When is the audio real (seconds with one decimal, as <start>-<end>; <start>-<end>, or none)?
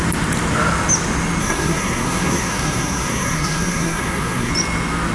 0.0-1.4; 4.5-5.1